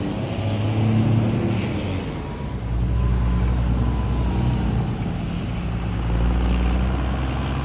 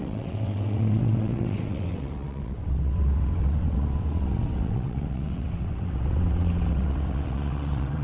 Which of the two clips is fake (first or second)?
second